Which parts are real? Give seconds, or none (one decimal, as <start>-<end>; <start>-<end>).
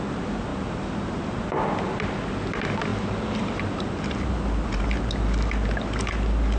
0.0-0.5; 1.4-2.9; 4.0-6.6